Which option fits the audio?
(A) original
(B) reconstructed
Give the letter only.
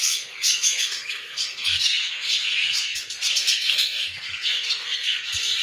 B